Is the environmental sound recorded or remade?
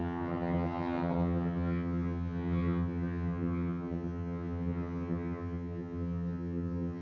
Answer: remade